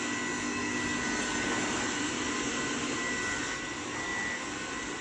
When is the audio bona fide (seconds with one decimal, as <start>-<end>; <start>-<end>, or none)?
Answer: 0.0-1.6; 2.2-5.0